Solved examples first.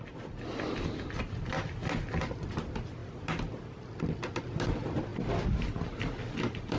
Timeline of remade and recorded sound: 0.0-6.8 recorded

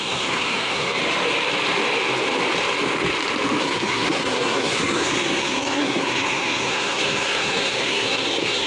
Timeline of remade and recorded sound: 0.0-1.0 remade; 1.0-3.6 recorded; 3.6-8.7 remade

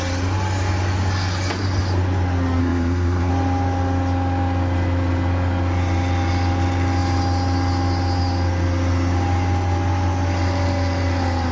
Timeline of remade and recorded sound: 0.0-2.6 recorded; 2.6-3.3 remade; 3.3-11.5 recorded

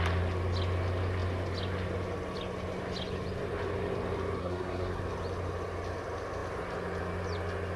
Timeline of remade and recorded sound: 0.0-4.4 recorded; 4.4-5.0 remade; 5.0-7.8 recorded

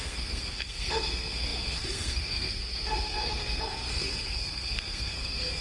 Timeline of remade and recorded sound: 0.0-5.6 remade

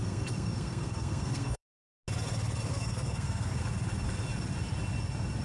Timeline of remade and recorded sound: 0.0-1.7 remade; 1.7-2.7 recorded; 2.7-3.6 remade; 3.6-5.4 recorded

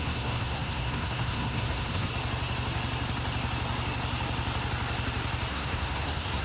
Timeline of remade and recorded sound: 0.0-2.1 remade; 2.1-5.5 recorded; 5.5-6.4 remade

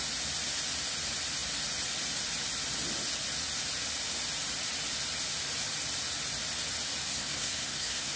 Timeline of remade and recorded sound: 0.0-7.1 recorded; 7.1-8.2 remade